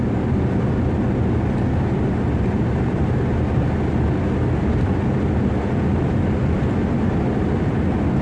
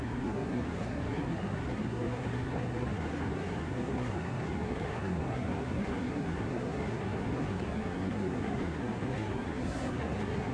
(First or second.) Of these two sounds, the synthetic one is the second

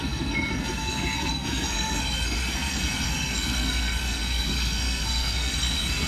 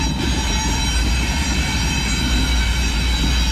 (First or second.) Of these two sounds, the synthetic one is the first